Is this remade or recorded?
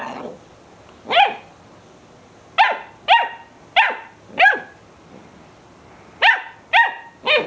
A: recorded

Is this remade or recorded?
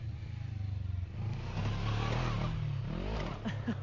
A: recorded